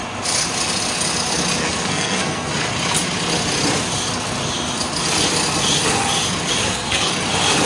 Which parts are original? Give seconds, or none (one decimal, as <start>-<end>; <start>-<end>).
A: 0.0-1.6; 2.5-6.6; 7.1-7.7